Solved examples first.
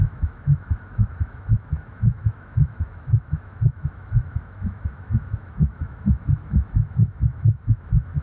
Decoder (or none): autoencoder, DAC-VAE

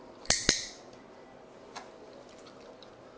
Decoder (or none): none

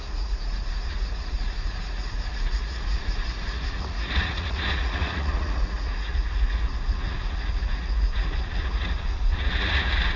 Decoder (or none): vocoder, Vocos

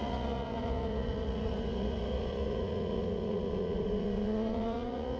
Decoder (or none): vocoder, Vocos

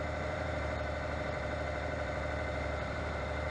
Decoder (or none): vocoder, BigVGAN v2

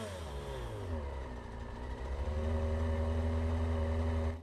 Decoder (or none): none